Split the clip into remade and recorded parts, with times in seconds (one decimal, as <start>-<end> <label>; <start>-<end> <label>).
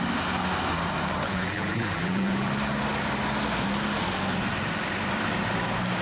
0.0-1.3 recorded; 1.3-2.5 remade; 2.5-6.0 recorded